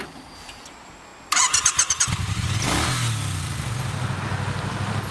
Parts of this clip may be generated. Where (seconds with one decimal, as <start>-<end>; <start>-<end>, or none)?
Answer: none